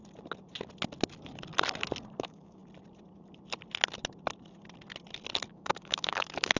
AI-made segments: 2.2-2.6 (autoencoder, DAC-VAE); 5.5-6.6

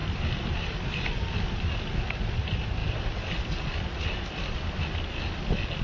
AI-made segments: none

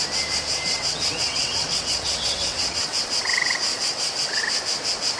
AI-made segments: 0.7-3.2 (vocoder, WaveNeXt); 3.7-4.4

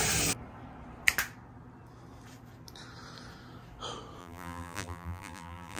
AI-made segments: 4.2-5.8 (vocoder, BigVGAN v2)

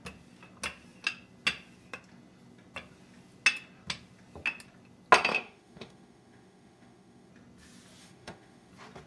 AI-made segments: 5.3-7.3 (autoencoder, DAC-VAE); 8.0-8.7

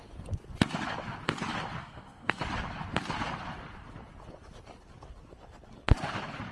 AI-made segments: 1.8-2.4 (codec, SNAC)

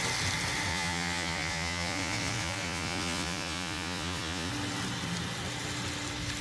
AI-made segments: 0.7-4.5 (vocoder, Vocos)

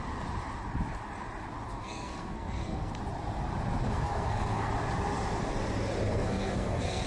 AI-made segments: 1.7-2.9 (codec, SNAC); 3.8-4.7; 6.1-7.1